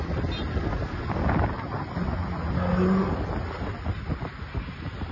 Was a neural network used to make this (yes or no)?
no